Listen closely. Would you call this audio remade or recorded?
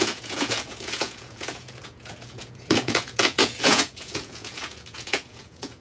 remade